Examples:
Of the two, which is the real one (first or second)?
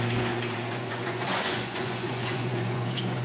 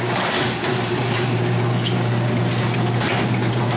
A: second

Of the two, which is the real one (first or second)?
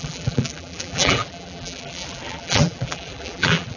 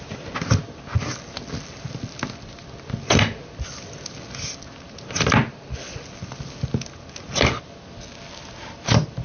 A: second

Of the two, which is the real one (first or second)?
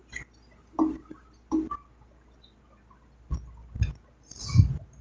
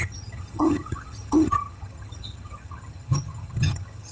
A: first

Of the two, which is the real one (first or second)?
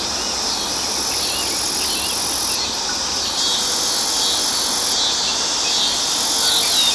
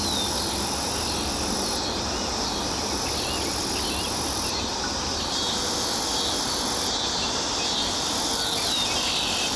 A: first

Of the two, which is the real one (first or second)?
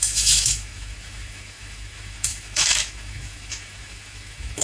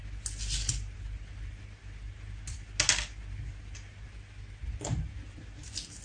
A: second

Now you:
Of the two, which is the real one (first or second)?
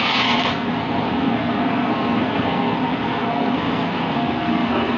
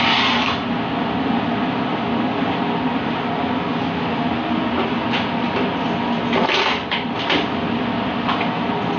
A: second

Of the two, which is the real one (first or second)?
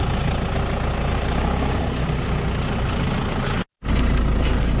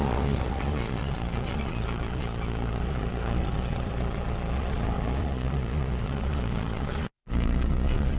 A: first